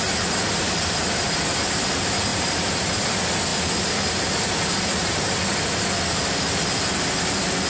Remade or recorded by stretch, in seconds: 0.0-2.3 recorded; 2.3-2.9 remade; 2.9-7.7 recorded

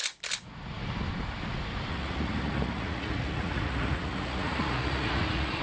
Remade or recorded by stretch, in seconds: 0.0-1.9 recorded; 1.9-5.6 remade